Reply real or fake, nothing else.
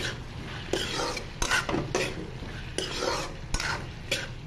real